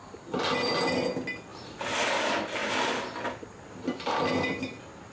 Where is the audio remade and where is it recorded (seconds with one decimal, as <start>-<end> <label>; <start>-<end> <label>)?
0.0-5.1 recorded